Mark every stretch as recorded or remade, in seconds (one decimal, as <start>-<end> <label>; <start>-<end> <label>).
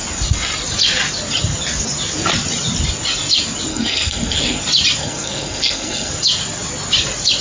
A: 0.0-3.7 recorded; 3.7-4.6 remade; 4.6-5.0 recorded; 5.0-6.1 remade; 6.1-7.4 recorded